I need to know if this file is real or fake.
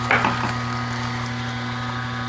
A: real